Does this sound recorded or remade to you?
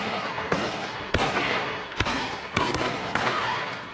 remade